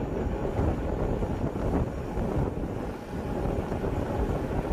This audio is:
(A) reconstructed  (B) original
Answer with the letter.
B